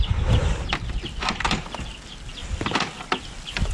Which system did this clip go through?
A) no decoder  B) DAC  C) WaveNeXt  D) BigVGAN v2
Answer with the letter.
A